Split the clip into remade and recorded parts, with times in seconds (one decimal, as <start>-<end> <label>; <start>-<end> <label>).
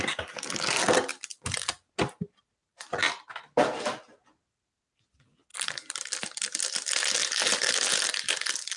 0.0-1.1 recorded; 1.1-1.7 remade; 1.7-2.7 recorded; 2.7-3.4 remade; 3.4-5.5 recorded; 5.5-6.2 remade; 6.2-8.8 recorded